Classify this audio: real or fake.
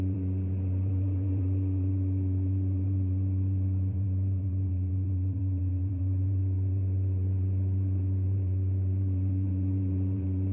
fake